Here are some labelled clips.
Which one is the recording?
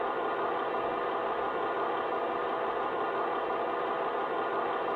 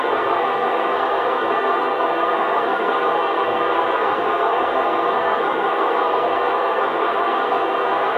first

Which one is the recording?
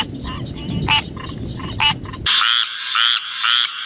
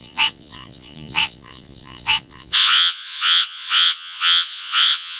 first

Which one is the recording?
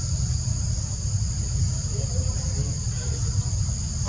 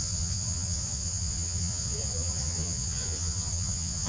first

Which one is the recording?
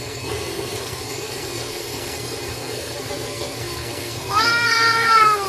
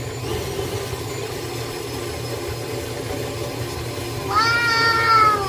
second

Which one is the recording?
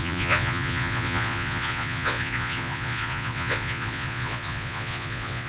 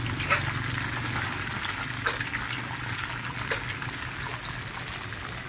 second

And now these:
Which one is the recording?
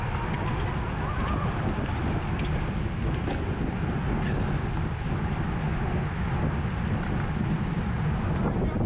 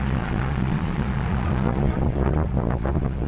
first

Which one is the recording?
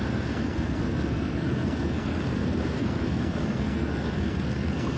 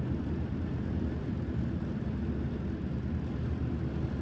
second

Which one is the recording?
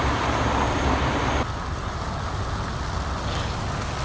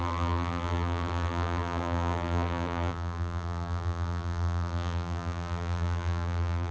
first